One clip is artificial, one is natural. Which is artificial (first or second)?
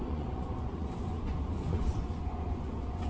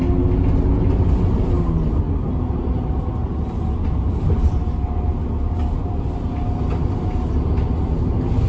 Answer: first